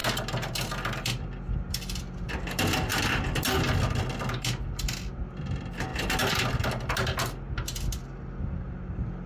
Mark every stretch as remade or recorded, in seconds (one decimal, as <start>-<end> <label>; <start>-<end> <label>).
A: 0.0-9.3 recorded